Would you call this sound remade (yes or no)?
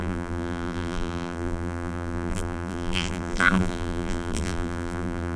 yes